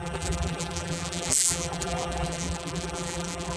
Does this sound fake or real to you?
fake